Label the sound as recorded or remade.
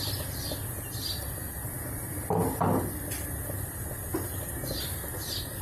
recorded